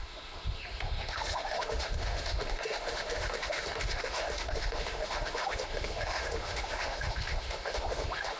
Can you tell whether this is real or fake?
fake